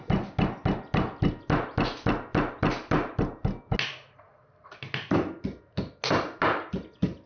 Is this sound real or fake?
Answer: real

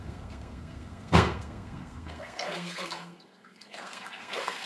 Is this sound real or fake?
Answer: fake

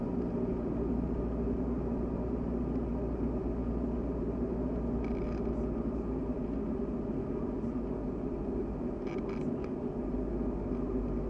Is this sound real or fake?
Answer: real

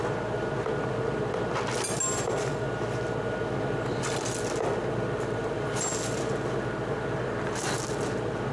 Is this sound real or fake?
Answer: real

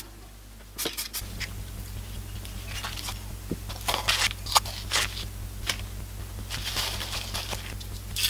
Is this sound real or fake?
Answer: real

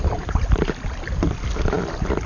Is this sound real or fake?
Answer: real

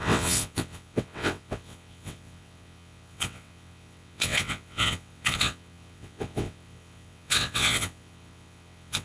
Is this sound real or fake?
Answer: fake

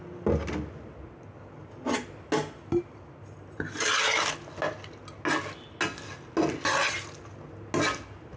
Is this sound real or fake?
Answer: real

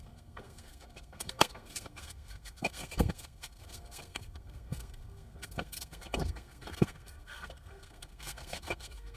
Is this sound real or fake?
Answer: fake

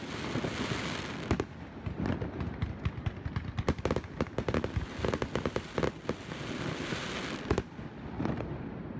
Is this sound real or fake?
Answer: real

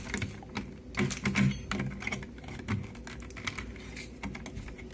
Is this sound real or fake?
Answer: real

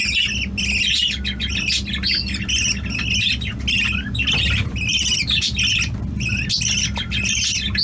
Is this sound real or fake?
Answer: real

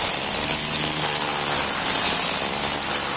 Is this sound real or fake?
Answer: real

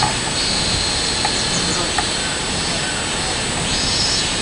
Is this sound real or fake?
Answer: real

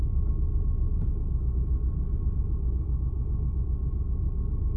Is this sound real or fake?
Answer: real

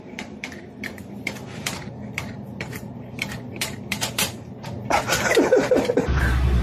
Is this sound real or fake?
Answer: fake